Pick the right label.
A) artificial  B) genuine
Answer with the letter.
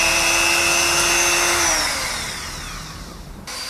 A